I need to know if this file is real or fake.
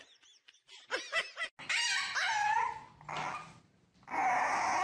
real